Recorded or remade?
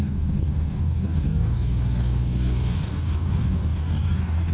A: remade